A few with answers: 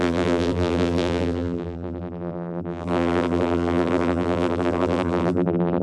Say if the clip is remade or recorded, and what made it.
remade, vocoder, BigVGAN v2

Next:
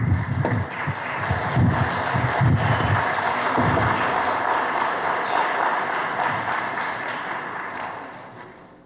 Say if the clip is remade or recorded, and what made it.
recorded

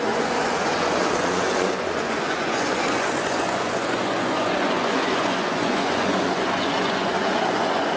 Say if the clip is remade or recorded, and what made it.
remade, vocoder, Vocos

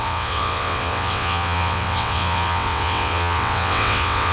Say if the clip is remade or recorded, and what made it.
remade, vocoder, WaveNeXt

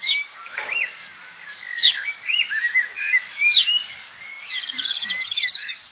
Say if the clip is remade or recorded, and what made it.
remade, codec, DAC